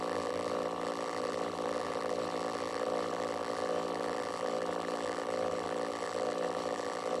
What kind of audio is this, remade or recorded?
remade